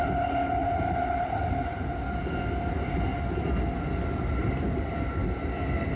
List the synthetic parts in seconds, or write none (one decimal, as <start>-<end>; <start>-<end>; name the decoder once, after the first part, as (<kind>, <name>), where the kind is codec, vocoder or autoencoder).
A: 0.6-1.9 (vocoder, BigVGAN v2)